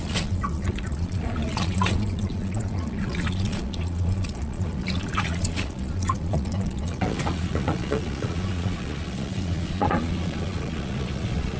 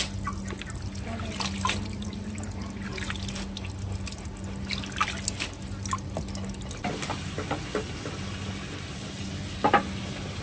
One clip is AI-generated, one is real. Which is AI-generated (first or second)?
first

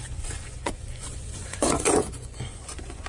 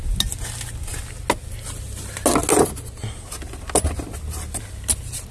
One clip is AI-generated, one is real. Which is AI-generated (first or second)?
first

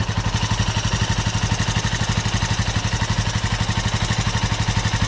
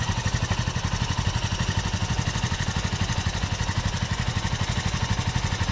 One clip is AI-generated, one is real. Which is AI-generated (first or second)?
second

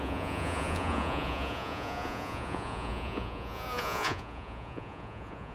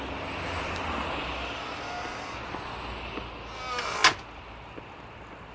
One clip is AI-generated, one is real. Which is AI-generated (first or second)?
first